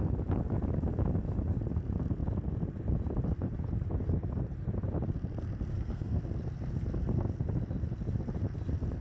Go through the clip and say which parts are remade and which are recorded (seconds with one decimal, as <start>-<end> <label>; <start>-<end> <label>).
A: 0.0-5.7 recorded; 5.7-6.2 remade; 6.2-9.0 recorded